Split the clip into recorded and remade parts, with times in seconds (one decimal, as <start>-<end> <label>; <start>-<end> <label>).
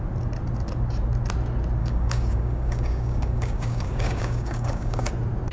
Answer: 0.0-1.8 recorded; 1.8-5.1 remade; 5.1-5.5 recorded